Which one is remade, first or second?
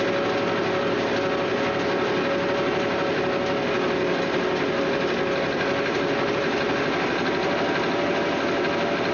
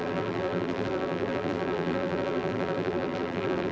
second